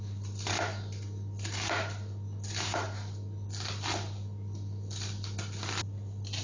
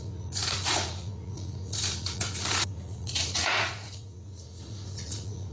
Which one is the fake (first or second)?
second